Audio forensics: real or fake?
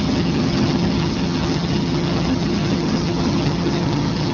fake